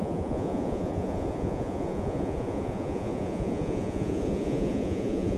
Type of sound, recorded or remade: remade